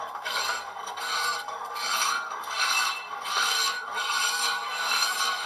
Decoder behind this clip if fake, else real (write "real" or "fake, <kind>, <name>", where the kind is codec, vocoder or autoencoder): fake, codec, SNAC